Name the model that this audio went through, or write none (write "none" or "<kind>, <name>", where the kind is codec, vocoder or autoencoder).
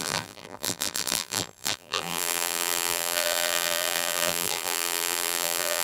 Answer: vocoder, BigVGAN v2